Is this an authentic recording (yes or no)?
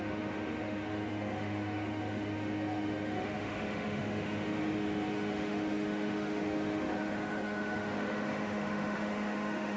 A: no